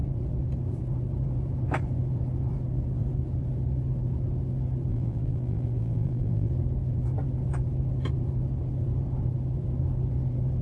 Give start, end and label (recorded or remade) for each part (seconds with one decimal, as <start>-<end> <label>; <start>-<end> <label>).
0.0-4.9 recorded; 4.9-6.5 remade; 6.5-10.6 recorded